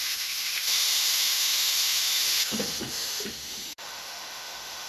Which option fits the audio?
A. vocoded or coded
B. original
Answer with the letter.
A